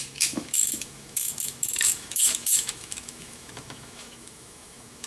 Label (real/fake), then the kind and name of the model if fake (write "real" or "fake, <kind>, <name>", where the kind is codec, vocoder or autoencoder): fake, autoencoder, DAC-VAE